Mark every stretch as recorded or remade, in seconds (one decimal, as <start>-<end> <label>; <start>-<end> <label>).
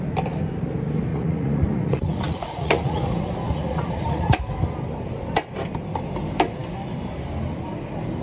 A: 0.0-1.1 recorded; 1.1-4.4 remade; 4.4-8.2 recorded